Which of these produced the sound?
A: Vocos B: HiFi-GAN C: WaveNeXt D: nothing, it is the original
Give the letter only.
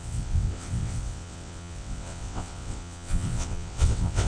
C